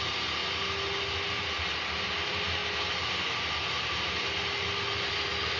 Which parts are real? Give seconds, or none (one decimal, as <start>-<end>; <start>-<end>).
0.0-5.6